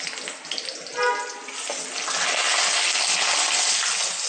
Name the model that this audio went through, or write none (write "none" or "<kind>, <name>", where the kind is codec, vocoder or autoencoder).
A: none